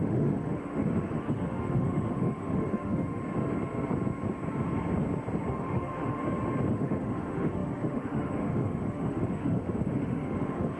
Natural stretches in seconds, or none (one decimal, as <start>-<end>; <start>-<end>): 3.2-5.5; 6.2-6.7